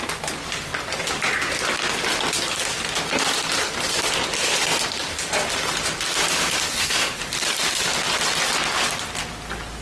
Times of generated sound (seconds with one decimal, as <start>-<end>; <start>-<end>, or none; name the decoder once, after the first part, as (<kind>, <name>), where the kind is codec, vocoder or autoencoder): 6.7-7.2 (codec, SNAC)